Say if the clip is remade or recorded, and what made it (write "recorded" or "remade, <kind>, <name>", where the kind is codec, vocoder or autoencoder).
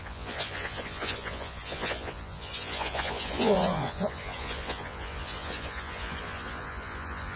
remade, vocoder, Vocos